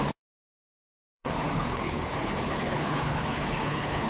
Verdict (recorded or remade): remade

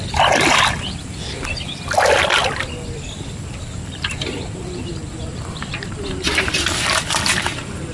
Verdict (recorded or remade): recorded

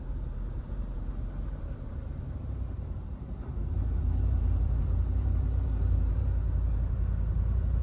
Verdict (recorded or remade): remade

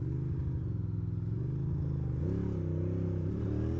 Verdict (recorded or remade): recorded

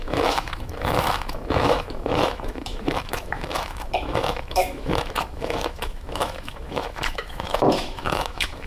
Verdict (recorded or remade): remade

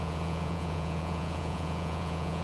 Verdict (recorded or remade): remade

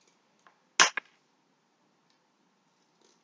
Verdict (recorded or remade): recorded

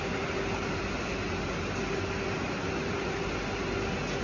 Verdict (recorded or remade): recorded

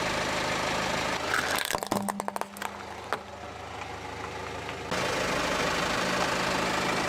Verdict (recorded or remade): recorded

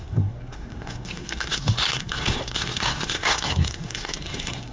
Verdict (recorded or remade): remade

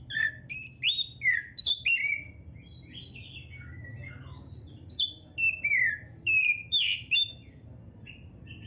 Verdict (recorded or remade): recorded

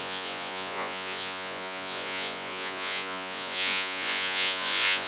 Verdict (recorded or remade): remade